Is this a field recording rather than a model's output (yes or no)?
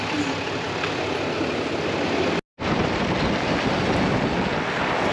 yes